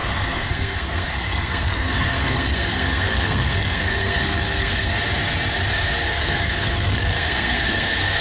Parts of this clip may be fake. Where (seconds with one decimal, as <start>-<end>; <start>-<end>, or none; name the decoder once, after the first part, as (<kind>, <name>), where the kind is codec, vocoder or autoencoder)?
0.0-4.9 (codec, SNAC); 6.1-8.2